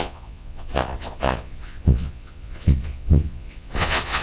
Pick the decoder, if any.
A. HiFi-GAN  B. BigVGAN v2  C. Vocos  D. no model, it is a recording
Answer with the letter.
C